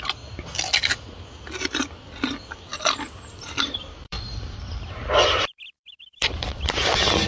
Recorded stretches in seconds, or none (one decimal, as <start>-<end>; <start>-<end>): 0.0-2.7; 6.8-7.3